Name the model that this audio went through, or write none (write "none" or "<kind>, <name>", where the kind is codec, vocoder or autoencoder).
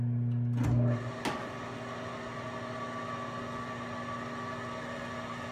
none